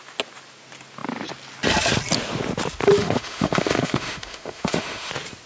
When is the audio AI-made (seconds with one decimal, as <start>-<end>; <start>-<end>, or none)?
3.0-5.1